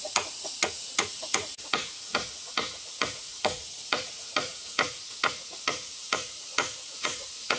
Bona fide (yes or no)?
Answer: no